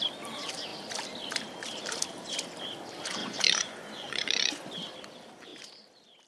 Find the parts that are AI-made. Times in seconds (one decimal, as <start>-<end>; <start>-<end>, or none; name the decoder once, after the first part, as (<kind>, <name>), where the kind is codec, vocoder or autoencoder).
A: 3.2-4.7 (vocoder, Vocos)